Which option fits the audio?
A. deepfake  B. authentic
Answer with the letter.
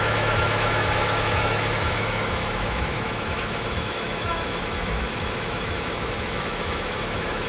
A